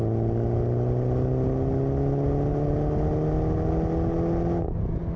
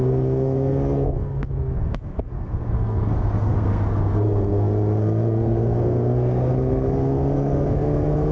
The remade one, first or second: second